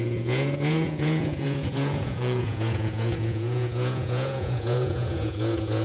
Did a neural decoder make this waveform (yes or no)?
yes